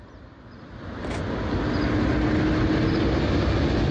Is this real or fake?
real